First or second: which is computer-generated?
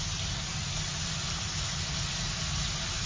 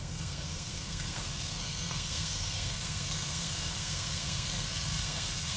second